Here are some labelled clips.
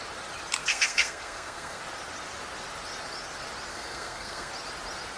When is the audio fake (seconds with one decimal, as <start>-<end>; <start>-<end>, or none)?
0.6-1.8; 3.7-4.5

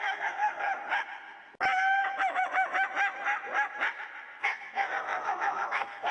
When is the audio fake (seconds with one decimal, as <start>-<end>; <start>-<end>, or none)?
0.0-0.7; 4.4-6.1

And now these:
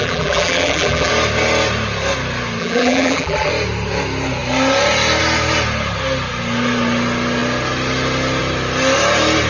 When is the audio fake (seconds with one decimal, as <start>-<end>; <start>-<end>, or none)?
0.0-1.1; 2.6-3.5

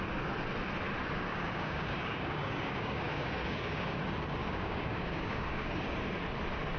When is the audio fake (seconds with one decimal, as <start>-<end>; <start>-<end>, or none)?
1.3-4.0; 4.4-5.8

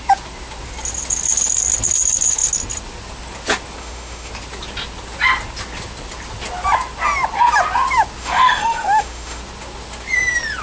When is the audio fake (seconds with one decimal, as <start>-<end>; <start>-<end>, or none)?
3.8-4.3; 8.2-9.4